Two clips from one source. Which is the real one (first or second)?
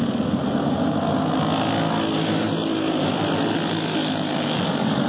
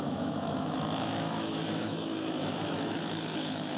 first